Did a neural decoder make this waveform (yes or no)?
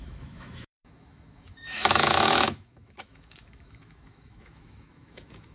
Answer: yes